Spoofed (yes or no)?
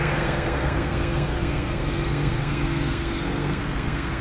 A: yes